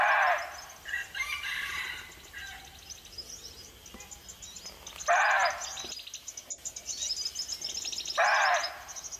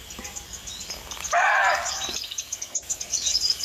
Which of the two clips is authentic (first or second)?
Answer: first